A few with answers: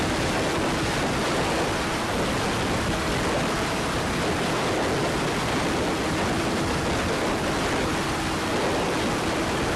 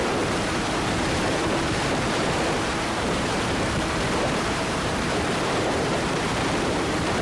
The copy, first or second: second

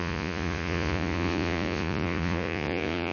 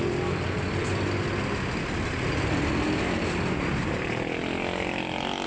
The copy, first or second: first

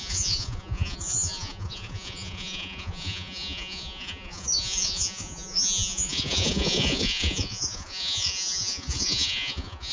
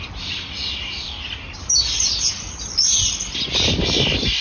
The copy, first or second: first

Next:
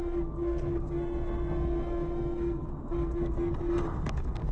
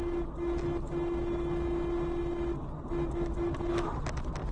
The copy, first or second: first